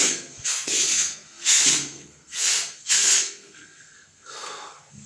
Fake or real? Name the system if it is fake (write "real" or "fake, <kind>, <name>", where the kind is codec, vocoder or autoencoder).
fake, codec, SNAC